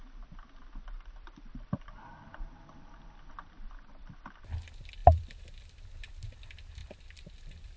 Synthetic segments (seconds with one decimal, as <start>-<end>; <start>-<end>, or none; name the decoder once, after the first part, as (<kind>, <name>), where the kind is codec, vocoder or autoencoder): 5.0-5.5 (vocoder, BigVGAN v2); 6.8-7.8